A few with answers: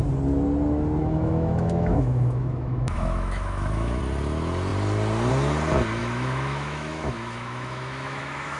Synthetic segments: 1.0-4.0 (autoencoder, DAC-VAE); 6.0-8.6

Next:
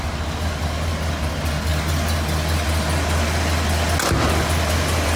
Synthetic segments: none

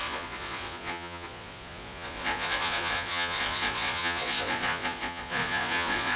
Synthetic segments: 0.0-6.2 (vocoder, Vocos)

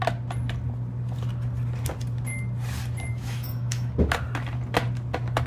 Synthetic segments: 3.1-3.9 (autoencoder, DAC-VAE)

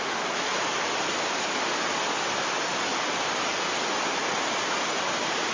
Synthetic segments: none

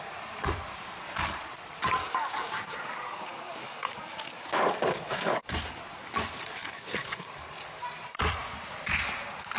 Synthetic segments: 2.0-5.8 (codec, DAC); 6.6-7.4

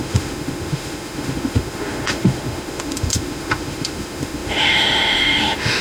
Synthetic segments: 0.0-5.8 (autoencoder, DAC-VAE)